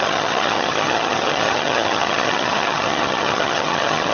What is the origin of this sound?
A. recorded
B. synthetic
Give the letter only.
B